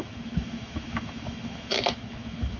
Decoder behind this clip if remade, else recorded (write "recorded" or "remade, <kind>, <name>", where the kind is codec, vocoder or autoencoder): remade, autoencoder, DAC-VAE